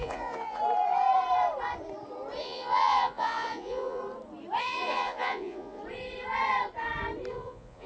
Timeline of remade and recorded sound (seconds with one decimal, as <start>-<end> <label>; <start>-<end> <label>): 0.0-0.6 remade; 0.6-2.4 recorded; 2.4-4.0 remade; 4.0-4.6 recorded; 4.6-5.8 remade; 5.8-7.3 recorded; 7.3-7.9 remade